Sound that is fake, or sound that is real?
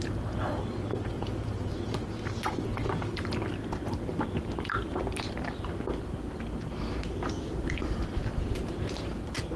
real